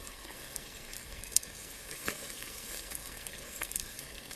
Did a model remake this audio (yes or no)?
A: yes